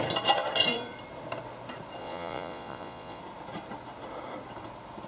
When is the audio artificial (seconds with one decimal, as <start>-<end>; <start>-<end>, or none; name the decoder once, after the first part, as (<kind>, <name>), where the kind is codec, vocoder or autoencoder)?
2.0-3.2 (vocoder, Vocos)